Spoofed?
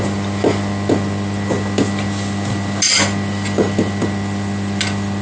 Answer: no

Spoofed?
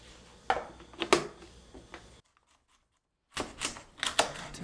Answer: no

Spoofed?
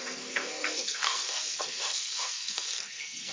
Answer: yes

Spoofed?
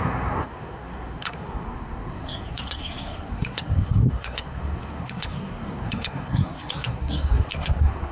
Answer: yes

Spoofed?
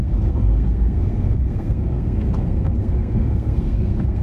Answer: yes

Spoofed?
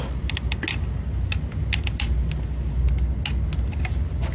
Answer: no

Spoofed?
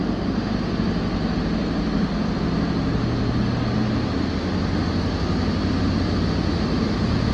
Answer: no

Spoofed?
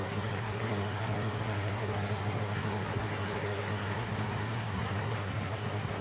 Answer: yes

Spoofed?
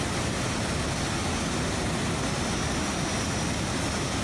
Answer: no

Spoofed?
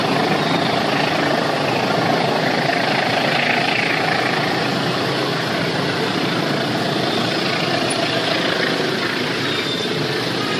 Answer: no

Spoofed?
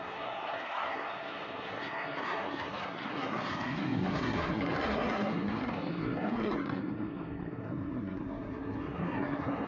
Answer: yes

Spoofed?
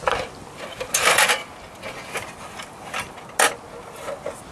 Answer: no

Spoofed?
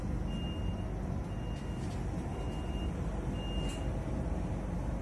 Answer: no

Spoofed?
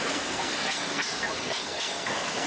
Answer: yes